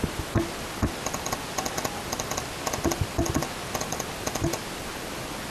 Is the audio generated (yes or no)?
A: no